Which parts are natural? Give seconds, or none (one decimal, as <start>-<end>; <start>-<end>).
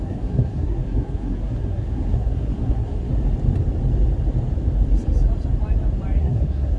3.1-6.2